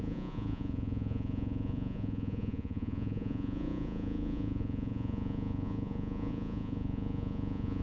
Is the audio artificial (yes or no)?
yes